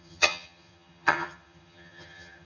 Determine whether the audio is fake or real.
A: fake